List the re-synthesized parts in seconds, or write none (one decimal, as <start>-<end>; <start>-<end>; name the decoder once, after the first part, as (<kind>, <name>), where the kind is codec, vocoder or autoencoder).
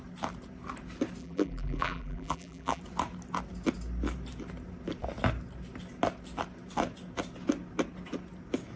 1.2-2.8 (vocoder, BigVGAN v2)